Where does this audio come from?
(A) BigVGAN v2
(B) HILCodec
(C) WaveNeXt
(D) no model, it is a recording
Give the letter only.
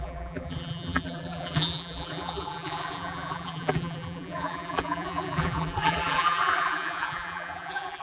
A